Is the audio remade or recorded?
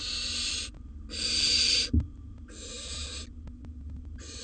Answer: recorded